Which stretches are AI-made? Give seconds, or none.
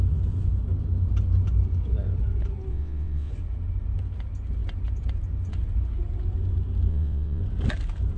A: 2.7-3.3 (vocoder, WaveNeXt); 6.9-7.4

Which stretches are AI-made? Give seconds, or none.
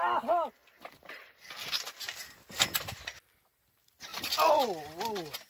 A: none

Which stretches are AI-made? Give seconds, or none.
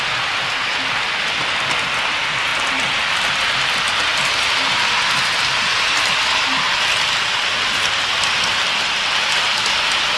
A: none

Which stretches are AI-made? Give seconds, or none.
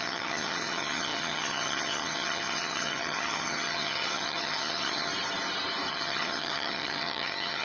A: 0.0-5.1 (vocoder, HiFi-GAN); 5.9-7.6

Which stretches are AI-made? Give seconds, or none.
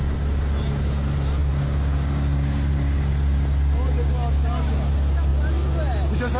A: none